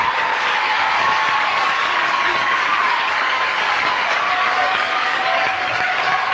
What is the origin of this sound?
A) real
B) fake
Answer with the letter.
B